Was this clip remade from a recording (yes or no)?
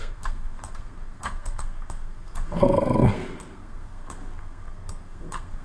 yes